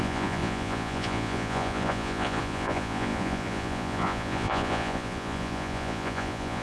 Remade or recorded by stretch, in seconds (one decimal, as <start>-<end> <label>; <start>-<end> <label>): 0.0-6.6 remade